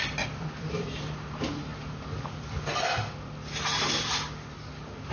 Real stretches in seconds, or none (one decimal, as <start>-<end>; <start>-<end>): 0.0-5.1